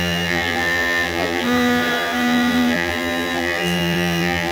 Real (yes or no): no